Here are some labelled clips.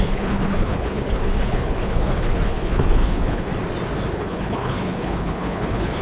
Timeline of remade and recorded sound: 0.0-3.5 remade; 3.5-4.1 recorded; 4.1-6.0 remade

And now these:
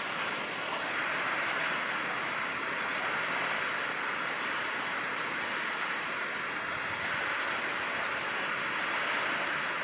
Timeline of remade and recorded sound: 0.0-9.8 recorded

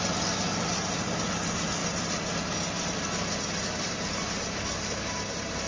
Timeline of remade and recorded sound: 0.0-5.7 recorded

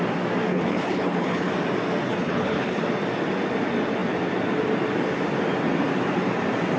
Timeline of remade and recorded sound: 0.0-0.5 recorded; 0.5-1.5 remade; 1.5-2.1 recorded; 2.1-2.8 remade; 2.8-6.8 recorded